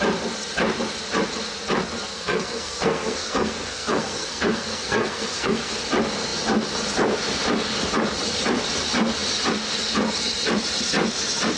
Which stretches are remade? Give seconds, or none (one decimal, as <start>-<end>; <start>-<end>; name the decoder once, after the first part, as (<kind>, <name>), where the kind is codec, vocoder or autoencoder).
2.1-5.7 (codec, SNAC)